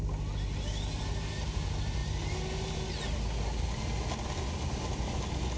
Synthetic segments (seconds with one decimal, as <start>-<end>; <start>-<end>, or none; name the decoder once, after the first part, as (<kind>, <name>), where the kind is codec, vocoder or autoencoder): none